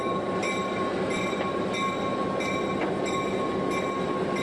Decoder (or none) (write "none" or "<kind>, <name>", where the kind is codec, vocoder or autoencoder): none